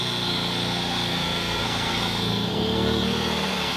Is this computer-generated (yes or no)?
yes